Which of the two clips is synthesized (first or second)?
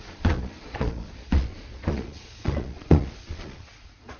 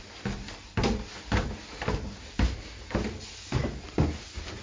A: first